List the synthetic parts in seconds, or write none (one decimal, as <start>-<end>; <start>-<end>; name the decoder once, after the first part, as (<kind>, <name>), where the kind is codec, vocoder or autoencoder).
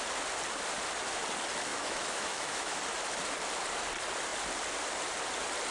1.7-2.8 (autoencoder, DAC-VAE)